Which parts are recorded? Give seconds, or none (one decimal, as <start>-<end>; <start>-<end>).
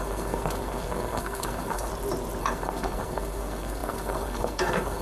1.9-2.4